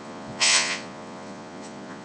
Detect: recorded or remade remade